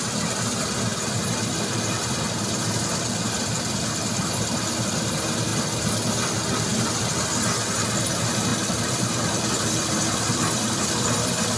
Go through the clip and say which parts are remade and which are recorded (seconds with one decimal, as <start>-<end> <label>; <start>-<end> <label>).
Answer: 0.0-5.5 remade; 5.5-6.3 recorded; 6.3-11.6 remade